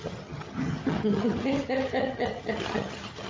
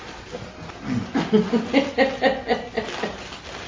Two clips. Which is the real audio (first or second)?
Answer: second